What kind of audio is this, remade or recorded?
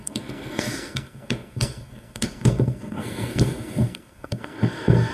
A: remade